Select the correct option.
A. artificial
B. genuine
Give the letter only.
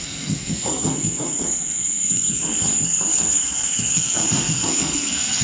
A